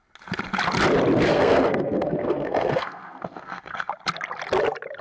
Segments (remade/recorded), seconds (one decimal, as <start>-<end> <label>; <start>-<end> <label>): 0.0-1.3 recorded; 1.3-3.9 remade; 3.9-5.0 recorded